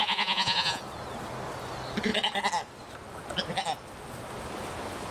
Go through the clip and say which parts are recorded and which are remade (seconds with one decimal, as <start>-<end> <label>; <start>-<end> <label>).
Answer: 0.0-0.8 remade; 0.8-5.1 recorded